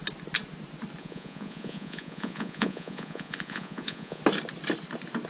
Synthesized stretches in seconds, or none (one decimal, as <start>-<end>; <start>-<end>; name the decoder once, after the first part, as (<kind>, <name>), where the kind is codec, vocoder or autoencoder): 1.0-4.2 (vocoder, Vocos)

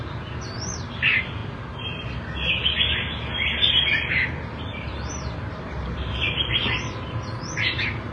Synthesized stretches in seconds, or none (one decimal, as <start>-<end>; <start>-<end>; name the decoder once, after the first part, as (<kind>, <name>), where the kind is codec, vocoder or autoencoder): 0.0-1.4 (vocoder, BigVGAN v2); 4.6-8.1

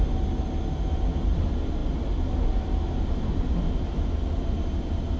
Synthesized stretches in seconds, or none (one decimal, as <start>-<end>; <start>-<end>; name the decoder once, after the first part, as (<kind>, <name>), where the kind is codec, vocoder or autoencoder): none

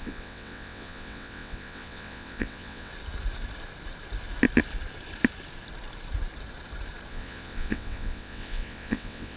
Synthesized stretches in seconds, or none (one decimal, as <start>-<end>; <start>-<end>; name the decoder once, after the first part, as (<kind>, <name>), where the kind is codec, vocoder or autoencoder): 0.0-2.9 (vocoder, WaveNeXt); 7.1-9.4

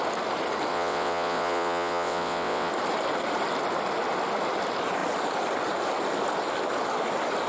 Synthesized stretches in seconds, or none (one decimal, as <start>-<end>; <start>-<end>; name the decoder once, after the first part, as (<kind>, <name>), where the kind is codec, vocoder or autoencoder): 0.7-2.7 (vocoder, WaveNeXt)

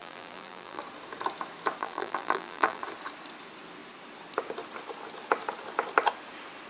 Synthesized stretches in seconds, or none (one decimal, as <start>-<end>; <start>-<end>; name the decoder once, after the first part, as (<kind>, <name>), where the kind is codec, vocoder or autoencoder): 0.0-0.8 (vocoder, BigVGAN v2); 1.8-2.8

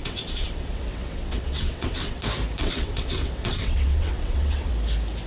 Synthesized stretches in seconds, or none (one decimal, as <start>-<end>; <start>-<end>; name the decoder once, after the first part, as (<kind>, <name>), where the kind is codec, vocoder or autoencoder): 0.0-2.2 (vocoder, WaveNeXt); 2.6-4.7